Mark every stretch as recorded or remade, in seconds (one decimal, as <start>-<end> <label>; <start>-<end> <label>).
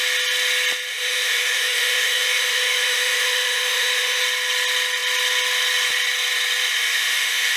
0.0-0.9 recorded; 0.9-4.2 remade; 4.2-6.7 recorded; 6.7-7.6 remade